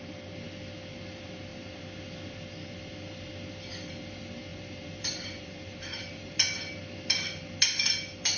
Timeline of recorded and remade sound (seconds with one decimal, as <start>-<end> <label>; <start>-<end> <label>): 0.0-4.5 recorded; 4.5-6.3 remade; 6.3-8.4 recorded